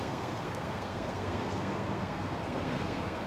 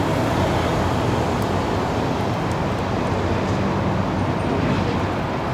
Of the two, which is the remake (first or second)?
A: first